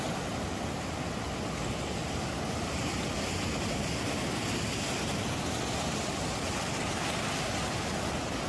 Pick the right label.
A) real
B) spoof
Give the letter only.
A